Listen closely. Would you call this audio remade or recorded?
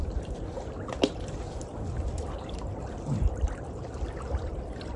recorded